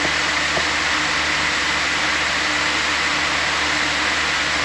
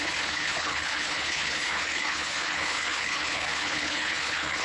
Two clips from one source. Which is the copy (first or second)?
second